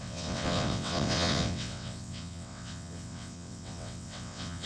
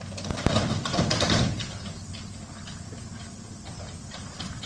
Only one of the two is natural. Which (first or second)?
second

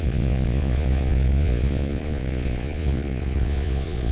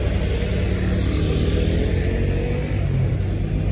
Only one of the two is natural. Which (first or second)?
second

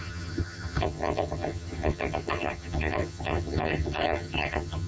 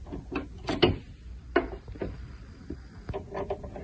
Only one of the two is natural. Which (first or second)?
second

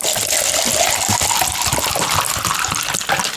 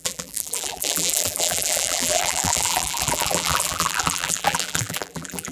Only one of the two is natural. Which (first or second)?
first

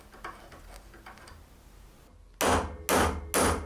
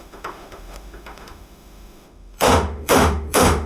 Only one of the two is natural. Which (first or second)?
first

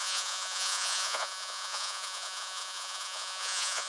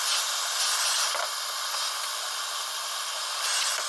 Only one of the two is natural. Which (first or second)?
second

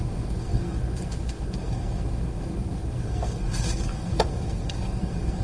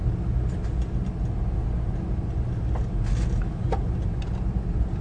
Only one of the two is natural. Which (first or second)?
second